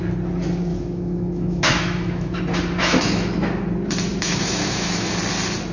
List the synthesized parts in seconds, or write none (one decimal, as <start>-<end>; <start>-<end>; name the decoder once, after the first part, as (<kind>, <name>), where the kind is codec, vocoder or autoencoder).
0.7-2.4 (autoencoder, DAC-VAE); 2.8-3.5; 4.1-5.1